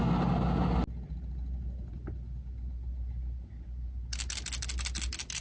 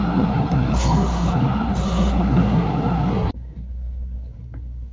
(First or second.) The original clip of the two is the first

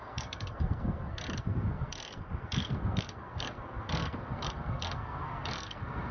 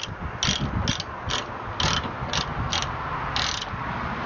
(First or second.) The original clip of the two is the second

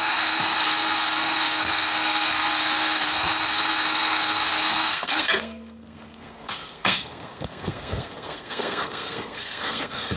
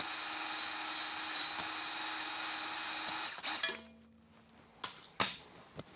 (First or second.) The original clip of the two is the second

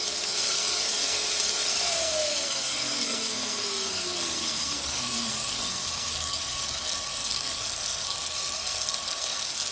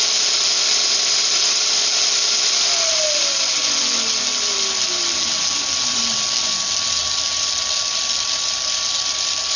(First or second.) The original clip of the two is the second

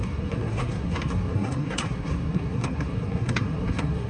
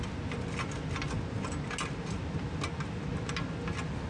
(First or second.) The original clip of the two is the second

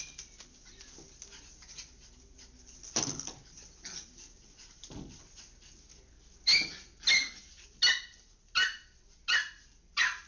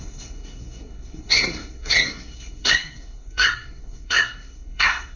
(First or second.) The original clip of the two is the first